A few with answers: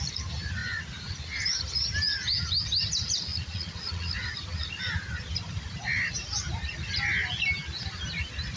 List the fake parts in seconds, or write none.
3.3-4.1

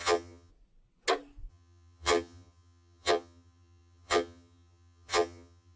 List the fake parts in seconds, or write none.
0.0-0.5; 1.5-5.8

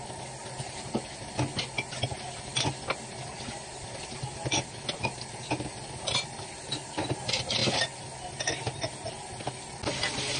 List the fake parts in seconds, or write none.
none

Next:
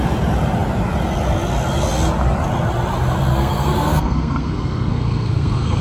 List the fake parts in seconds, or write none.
3.3-5.8

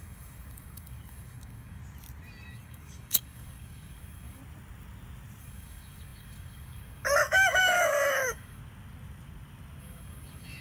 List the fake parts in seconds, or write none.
0.0-1.8; 2.5-4.4; 5.4-8.6; 9.8-10.6

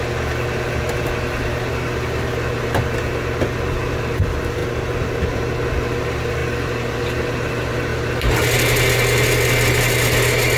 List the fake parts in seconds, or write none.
none

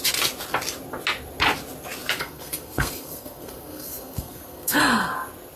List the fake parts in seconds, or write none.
2.2-4.8

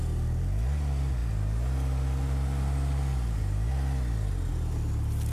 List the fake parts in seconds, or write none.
none